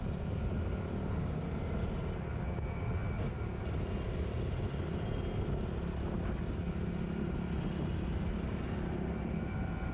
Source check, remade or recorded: recorded